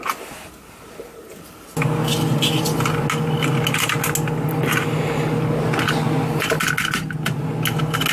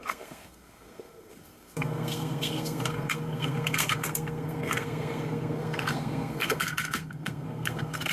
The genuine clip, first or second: first